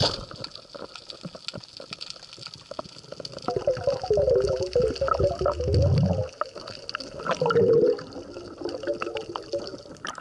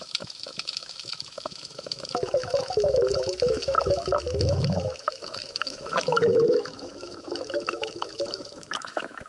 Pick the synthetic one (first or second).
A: second